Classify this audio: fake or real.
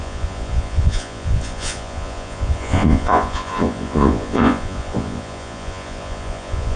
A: fake